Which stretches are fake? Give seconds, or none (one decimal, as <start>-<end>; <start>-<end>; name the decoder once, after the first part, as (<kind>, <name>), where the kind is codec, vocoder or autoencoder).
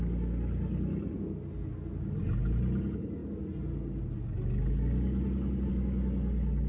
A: none